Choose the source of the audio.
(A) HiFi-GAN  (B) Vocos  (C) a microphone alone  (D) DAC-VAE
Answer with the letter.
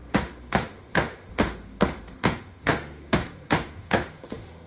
D